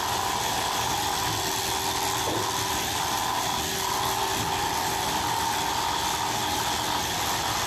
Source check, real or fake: real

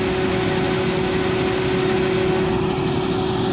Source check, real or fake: real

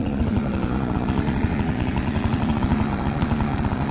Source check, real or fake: fake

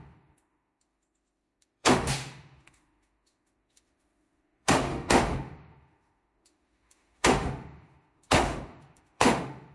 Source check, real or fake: fake